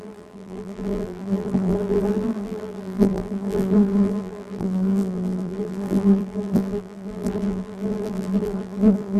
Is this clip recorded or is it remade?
remade